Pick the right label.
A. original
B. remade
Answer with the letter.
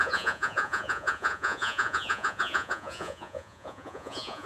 B